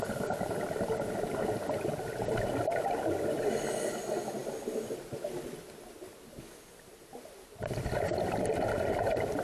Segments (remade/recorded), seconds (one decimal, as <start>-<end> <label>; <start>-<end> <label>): 0.0-9.4 recorded